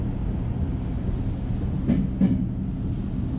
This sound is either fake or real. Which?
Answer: real